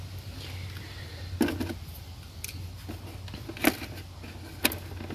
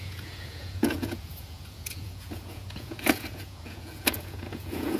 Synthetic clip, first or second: second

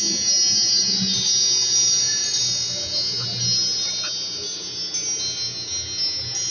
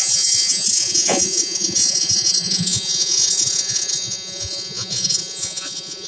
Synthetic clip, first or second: second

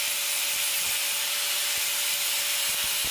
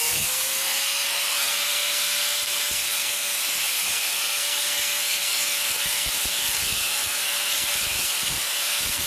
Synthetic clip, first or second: second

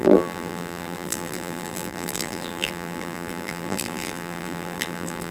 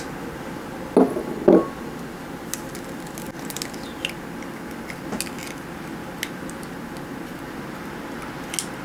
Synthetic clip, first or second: first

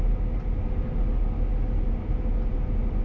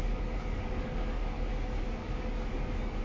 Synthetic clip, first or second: second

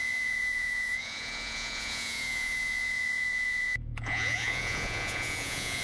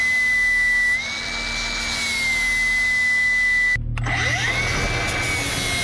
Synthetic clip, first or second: first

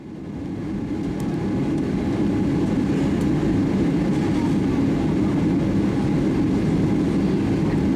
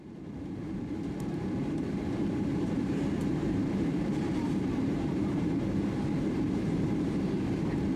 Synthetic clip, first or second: second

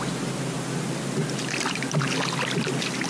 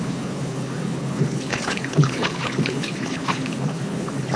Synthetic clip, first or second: second